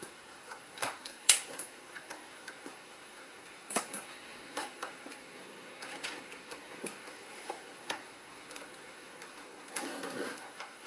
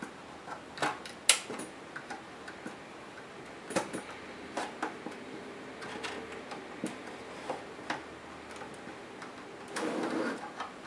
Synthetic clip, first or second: first